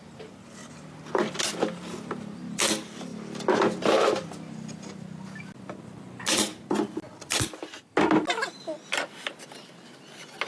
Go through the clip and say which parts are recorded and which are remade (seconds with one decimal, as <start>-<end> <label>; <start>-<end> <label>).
0.0-10.5 recorded